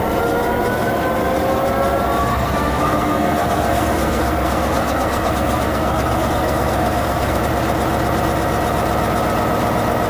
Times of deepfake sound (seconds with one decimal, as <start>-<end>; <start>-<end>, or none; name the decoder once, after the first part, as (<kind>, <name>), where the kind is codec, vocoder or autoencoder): 2.3-7.4 (codec, SNAC)